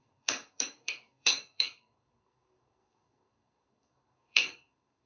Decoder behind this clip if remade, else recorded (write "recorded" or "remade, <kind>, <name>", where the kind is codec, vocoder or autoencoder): remade, codec, SNAC